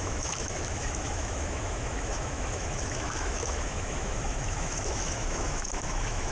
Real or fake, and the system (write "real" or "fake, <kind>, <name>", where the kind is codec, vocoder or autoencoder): fake, autoencoder, DAC-VAE